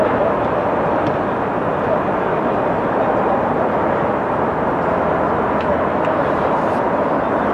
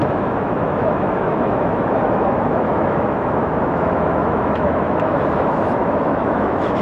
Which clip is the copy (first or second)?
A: second